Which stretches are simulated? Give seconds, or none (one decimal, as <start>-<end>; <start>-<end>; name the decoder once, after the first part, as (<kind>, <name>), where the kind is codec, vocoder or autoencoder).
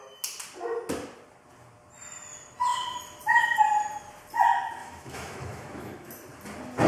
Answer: 4.8-6.1 (autoencoder, DAC-VAE)